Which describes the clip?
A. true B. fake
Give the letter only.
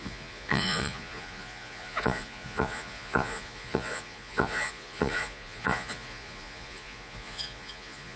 B